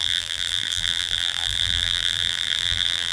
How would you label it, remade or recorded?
remade